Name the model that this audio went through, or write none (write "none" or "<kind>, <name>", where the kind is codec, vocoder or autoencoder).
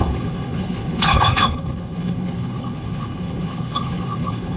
codec, HILCodec